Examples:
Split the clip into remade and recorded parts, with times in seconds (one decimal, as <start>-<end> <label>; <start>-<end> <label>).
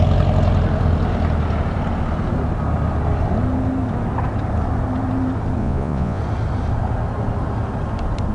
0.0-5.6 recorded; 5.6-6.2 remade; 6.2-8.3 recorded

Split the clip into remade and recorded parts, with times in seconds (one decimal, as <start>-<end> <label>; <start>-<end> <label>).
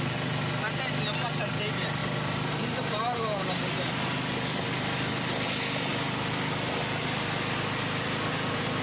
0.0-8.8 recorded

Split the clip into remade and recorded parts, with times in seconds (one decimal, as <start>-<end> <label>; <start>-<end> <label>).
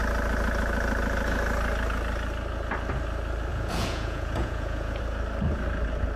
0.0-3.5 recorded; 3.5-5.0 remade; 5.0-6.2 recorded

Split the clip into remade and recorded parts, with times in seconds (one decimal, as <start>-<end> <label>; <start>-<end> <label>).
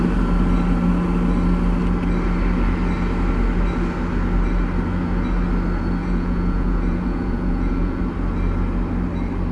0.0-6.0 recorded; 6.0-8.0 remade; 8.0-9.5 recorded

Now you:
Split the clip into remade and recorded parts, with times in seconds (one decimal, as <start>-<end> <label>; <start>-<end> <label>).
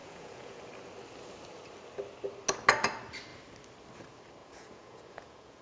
0.0-0.6 remade; 0.6-4.4 recorded; 4.4-5.6 remade